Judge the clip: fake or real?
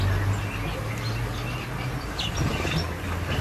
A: real